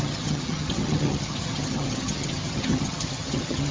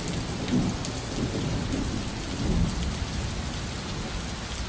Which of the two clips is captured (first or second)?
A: second